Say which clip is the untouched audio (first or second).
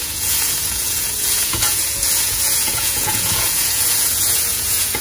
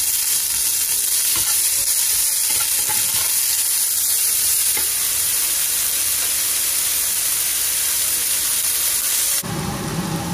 second